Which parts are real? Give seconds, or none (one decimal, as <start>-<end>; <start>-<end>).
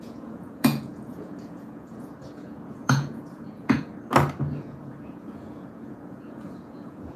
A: 3.9-4.6